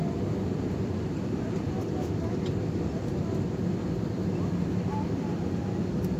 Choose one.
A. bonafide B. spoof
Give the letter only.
A